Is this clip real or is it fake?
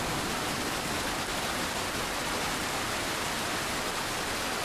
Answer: real